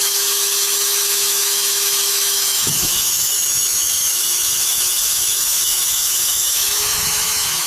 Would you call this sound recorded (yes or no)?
no